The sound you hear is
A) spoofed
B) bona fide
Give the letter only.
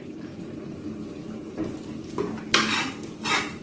B